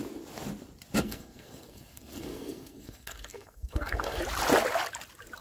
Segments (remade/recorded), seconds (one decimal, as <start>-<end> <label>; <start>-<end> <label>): 0.0-1.0 recorded; 1.0-4.2 remade; 4.2-5.4 recorded